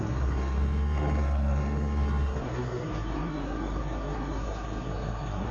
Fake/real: fake